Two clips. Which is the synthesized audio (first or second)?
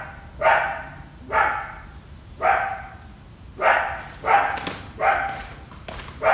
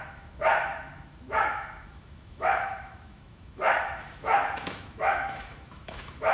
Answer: second